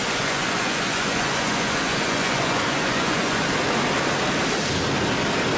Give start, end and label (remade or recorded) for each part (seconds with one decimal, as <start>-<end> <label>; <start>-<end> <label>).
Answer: 0.0-3.4 remade; 3.4-5.6 recorded